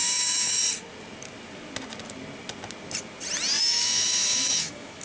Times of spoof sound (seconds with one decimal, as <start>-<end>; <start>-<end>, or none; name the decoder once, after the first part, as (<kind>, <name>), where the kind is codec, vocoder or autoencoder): 0.0-0.6 (autoencoder, DAC-VAE); 3.6-5.0